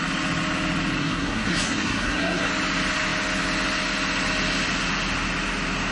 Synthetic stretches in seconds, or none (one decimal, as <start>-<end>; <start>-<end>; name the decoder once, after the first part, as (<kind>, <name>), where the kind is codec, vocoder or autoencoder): 1.0-2.5 (codec, SNAC)